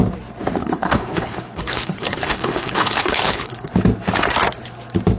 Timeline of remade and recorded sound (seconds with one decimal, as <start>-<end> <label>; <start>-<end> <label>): 0.0-0.6 recorded; 0.6-3.7 remade; 3.7-5.2 recorded